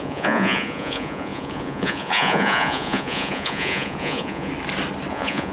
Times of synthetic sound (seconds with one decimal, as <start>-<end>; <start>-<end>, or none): 0.0-4.5; 5.1-5.5